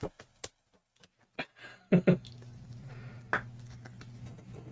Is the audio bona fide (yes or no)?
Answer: yes